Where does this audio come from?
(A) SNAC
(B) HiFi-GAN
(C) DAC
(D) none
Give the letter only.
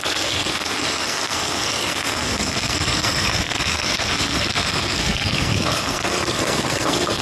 A